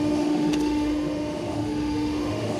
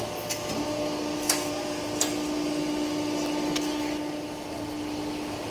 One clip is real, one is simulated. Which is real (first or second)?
second